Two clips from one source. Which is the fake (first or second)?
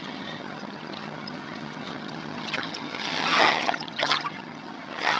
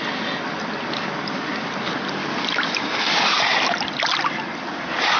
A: first